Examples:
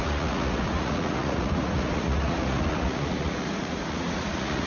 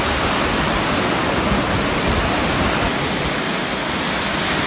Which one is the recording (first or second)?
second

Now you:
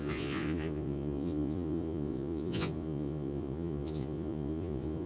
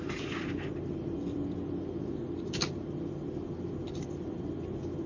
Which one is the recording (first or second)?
second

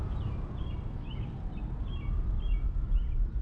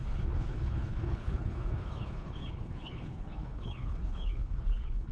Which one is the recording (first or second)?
first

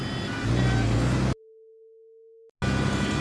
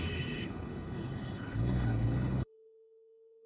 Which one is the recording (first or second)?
first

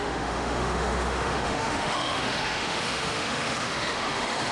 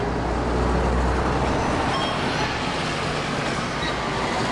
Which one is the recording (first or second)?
second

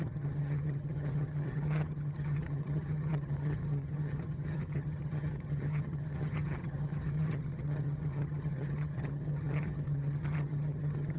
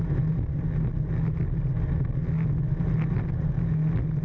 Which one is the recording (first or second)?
second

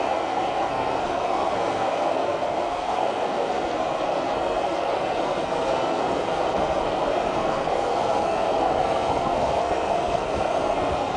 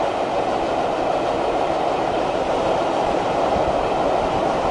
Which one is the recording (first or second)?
second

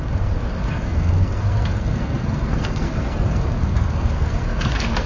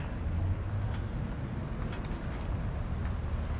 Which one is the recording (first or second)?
second